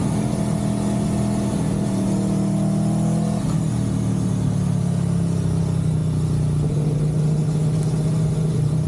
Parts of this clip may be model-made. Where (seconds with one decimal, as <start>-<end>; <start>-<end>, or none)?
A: none